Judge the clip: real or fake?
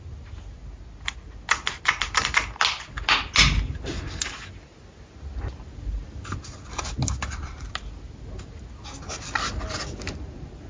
real